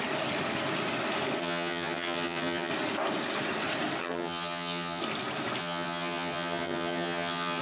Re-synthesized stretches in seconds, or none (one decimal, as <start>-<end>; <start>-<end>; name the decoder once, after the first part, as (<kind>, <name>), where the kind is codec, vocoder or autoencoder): 1.4-2.7 (vocoder, HiFi-GAN); 4.0-5.0; 5.6-7.6